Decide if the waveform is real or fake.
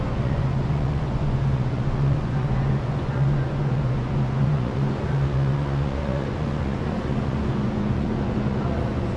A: fake